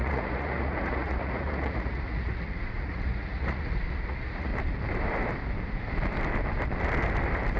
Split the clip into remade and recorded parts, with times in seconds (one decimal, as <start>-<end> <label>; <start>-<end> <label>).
0.0-4.5 remade; 4.5-7.6 recorded